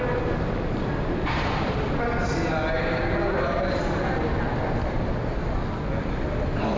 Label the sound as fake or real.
real